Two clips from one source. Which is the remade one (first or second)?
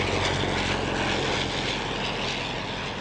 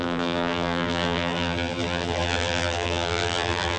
second